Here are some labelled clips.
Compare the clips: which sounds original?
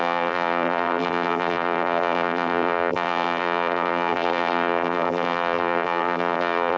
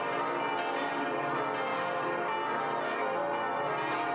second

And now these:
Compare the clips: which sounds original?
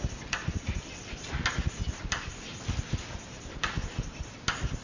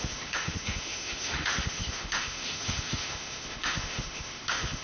first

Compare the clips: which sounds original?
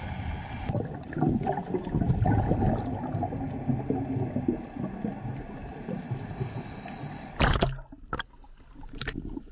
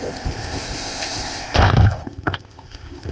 first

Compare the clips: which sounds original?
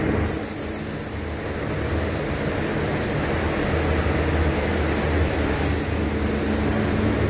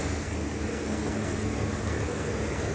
first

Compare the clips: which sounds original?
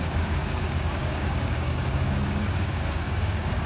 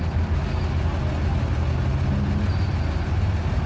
second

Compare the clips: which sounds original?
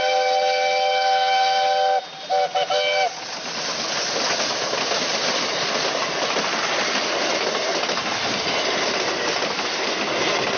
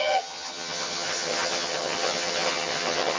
first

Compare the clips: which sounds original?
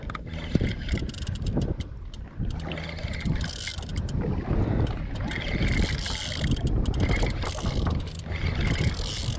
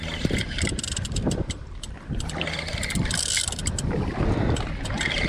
first